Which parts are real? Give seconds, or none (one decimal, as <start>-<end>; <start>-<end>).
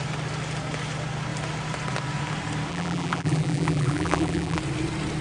0.0-2.7; 4.6-5.2